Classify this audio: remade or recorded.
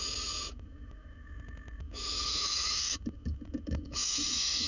remade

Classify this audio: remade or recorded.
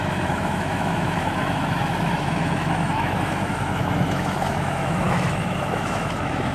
remade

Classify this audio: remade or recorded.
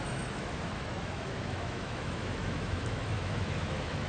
remade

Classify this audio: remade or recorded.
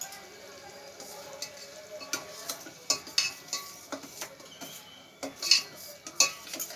recorded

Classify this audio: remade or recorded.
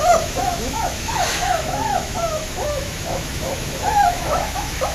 remade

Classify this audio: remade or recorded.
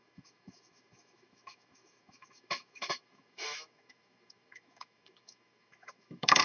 remade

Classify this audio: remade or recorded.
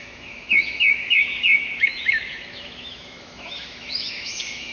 remade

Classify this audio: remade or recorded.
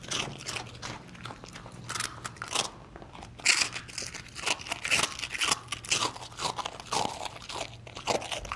recorded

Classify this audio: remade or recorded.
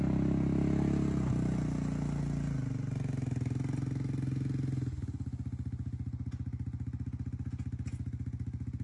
recorded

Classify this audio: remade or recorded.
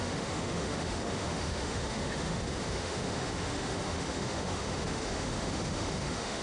remade